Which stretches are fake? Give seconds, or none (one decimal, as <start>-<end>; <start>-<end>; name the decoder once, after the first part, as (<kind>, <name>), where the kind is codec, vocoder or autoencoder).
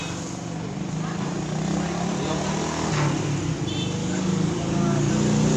4.0-5.1 (codec, DAC)